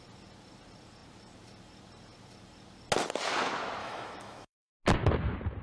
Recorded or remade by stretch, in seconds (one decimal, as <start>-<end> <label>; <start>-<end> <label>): 0.0-3.8 recorded; 3.8-4.7 remade; 4.7-5.6 recorded